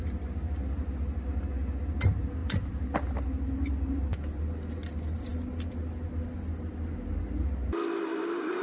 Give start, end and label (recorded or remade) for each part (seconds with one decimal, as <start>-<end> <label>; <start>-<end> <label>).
0.0-8.6 recorded